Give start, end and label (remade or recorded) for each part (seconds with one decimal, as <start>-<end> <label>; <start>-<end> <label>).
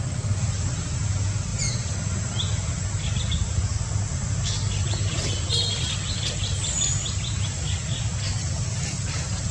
0.0-9.5 recorded